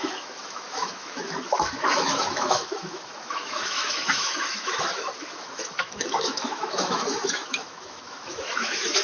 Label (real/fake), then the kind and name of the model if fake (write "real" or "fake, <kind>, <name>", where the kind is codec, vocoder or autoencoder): fake, autoencoder, DAC-VAE